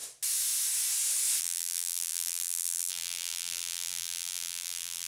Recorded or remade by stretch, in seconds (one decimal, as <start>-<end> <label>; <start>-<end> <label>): 0.0-1.4 recorded; 1.4-5.1 remade